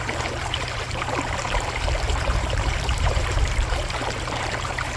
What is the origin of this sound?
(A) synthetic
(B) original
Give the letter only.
A